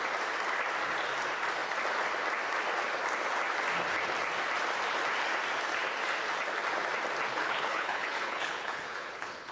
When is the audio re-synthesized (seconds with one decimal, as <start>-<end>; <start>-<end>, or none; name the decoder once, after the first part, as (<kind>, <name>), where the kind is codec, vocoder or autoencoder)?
7.3-9.5 (codec, HILCodec)